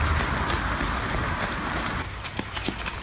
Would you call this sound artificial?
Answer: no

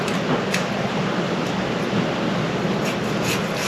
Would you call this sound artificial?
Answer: no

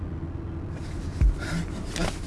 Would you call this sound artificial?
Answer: no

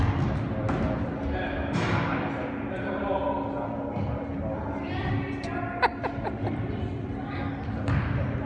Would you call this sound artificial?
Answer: no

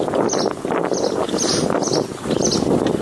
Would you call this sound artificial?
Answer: no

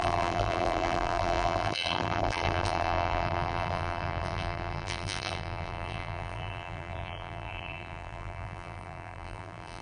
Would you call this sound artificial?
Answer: yes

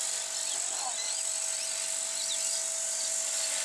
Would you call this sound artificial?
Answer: no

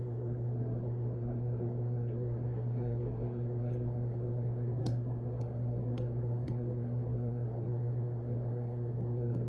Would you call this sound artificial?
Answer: yes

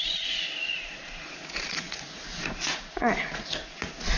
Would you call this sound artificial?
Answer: yes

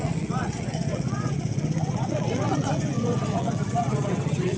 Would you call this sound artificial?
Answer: yes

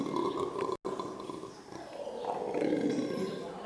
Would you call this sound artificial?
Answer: no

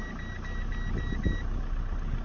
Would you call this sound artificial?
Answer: no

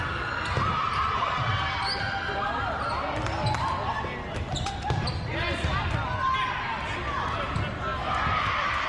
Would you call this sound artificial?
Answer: no